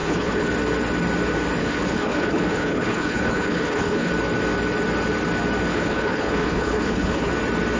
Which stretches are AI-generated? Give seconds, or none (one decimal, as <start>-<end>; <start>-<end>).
0.0-0.5; 1.6-4.1; 5.7-7.3